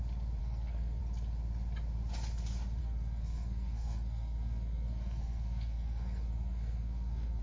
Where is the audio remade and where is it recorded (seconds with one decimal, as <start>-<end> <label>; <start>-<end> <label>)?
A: 0.0-0.4 recorded; 0.4-1.0 remade; 1.0-2.8 recorded; 2.8-7.4 remade